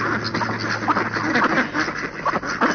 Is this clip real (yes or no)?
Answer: yes